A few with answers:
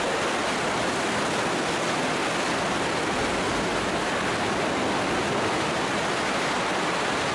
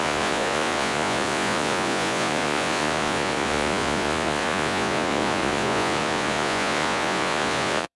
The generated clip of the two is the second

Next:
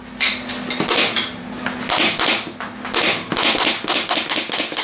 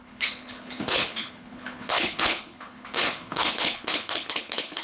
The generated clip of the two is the second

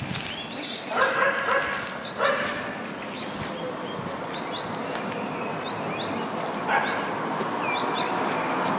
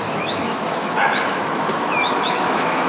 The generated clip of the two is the second